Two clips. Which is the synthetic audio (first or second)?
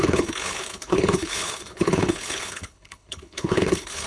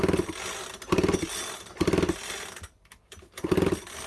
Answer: first